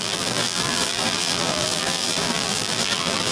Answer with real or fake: fake